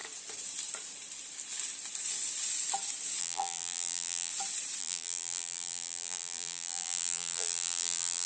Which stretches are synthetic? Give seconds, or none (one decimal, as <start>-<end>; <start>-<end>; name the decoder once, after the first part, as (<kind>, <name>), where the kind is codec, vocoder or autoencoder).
3.2-4.3 (vocoder, BigVGAN v2); 4.8-8.3